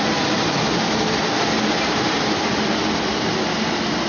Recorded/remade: recorded